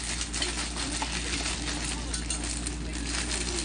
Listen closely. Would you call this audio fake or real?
real